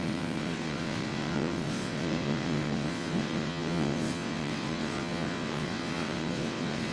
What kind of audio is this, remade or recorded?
remade